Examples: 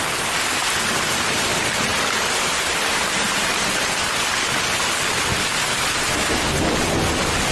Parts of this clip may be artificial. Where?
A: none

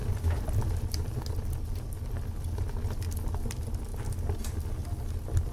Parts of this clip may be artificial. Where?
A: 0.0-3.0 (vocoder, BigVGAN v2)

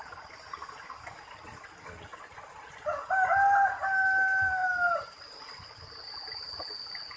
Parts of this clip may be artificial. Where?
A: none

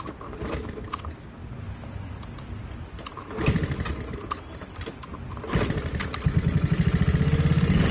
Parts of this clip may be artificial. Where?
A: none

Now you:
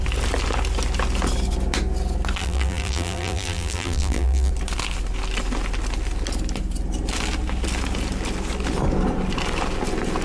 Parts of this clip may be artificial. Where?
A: 2.4-4.5 (vocoder, BigVGAN v2)

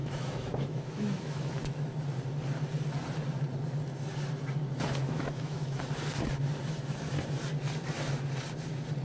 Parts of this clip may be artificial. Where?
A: 0.0-1.6 (autoencoder, DAC-VAE); 5.0-5.8